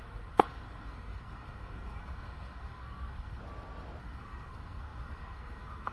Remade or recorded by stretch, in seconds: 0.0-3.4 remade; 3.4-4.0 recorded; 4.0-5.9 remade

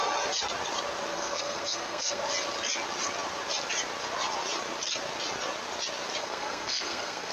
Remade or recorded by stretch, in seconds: 0.0-1.1 recorded; 1.1-2.2 remade; 2.2-6.2 recorded; 6.2-7.3 remade

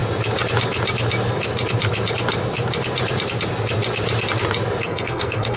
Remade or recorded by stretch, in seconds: 0.0-4.8 recorded; 4.8-5.6 remade

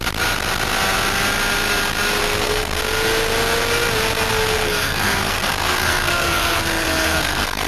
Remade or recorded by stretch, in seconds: 0.0-2.2 recorded; 2.2-2.8 remade; 2.8-4.3 recorded; 4.3-7.7 remade

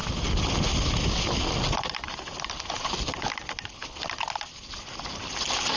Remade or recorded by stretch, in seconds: 0.0-5.8 recorded

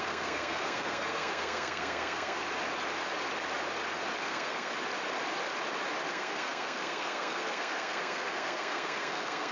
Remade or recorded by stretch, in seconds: 0.0-2.4 remade; 2.4-4.2 recorded; 4.2-4.7 remade; 4.7-6.1 recorded; 6.1-9.5 remade

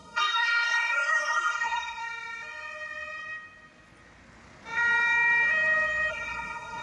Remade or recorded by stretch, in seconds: 0.0-2.0 remade; 2.0-6.1 recorded; 6.1-6.8 remade

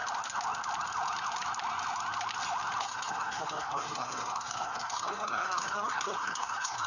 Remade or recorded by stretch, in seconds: 0.0-2.8 recorded; 2.8-6.9 remade